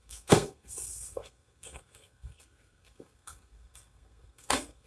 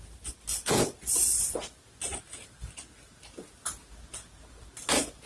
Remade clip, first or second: first